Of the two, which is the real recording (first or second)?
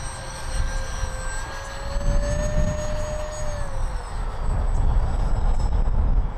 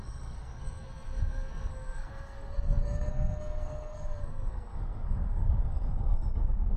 first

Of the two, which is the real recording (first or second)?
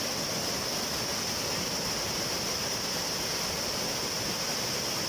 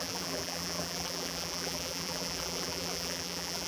first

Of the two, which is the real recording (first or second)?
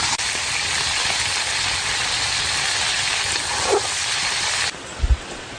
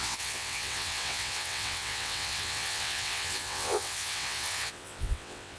first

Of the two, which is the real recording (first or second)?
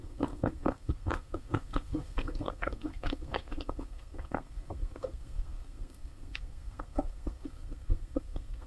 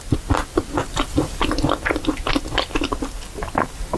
second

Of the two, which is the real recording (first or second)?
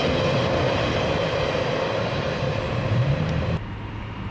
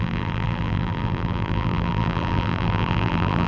first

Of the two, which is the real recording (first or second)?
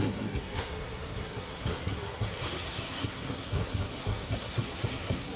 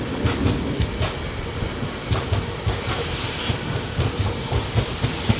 second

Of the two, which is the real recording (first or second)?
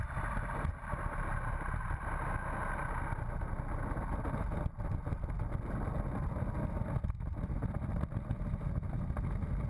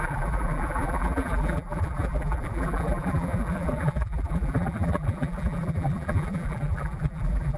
first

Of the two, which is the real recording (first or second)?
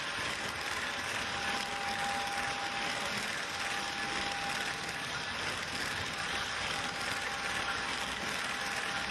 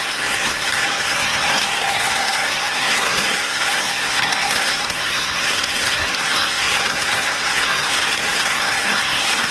first